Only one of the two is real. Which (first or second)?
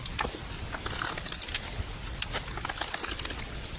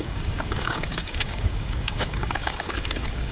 first